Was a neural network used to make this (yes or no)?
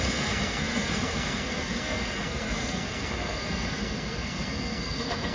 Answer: yes